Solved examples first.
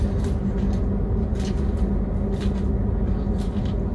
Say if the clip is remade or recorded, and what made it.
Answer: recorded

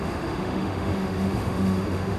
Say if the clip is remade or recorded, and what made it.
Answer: remade, autoencoder, DAC-VAE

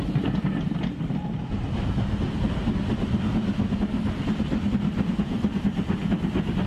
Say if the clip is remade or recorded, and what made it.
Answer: recorded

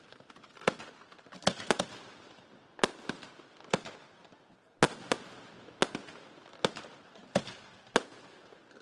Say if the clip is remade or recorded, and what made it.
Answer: recorded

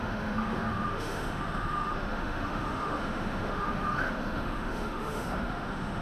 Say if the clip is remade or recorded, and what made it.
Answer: remade, autoencoder, DAC-VAE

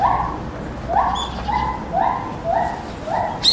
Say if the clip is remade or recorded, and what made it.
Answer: recorded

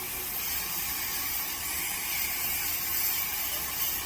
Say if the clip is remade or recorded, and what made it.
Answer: recorded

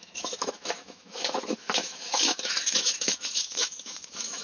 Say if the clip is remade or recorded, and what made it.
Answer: remade, autoencoder, DAC-VAE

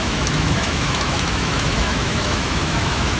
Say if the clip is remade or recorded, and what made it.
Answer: remade, autoencoder, DAC-VAE